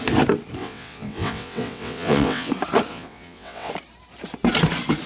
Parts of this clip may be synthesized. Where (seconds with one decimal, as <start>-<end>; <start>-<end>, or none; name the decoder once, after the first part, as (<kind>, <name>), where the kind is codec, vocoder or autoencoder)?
0.6-2.5 (vocoder, WaveNeXt); 2.9-3.7